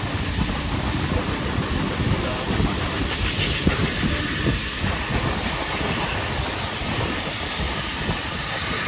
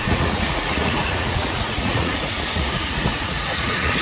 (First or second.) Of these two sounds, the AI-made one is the second